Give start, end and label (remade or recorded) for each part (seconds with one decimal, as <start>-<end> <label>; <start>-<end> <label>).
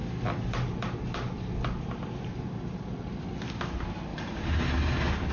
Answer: 0.0-5.3 recorded